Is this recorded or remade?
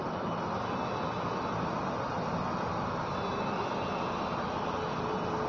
recorded